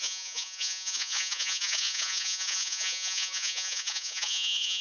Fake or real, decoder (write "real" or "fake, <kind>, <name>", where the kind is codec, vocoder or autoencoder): fake, vocoder, Vocos